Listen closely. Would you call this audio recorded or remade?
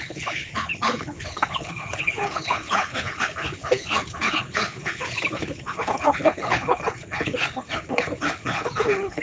remade